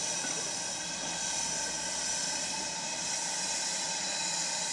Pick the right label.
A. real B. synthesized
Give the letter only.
A